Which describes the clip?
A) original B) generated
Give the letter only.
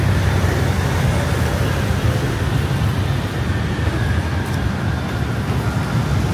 A